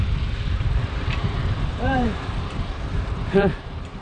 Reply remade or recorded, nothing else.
remade